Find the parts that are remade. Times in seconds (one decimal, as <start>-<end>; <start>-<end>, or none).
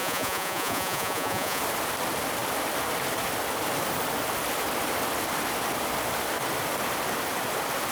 0.0-1.6